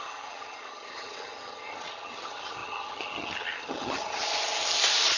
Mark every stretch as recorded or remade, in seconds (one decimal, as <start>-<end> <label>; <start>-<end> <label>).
0.0-4.2 remade; 4.2-5.2 recorded